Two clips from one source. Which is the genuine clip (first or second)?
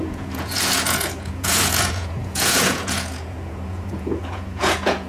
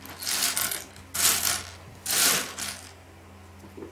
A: second